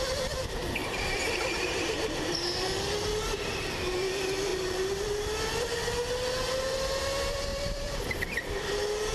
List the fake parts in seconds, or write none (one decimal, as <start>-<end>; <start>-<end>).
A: 0.8-2.3; 4.5-5.5; 7.5-8.2